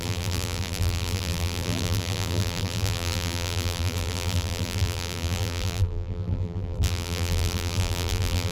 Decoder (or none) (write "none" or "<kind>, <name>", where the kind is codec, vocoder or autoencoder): vocoder, BigVGAN v2